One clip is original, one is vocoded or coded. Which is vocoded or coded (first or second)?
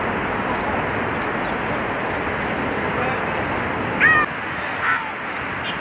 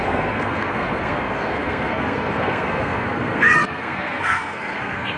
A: second